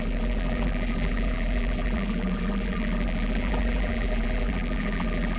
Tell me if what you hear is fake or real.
fake